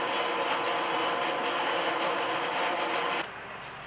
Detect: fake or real real